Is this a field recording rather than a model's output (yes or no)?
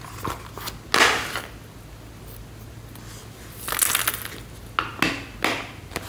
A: yes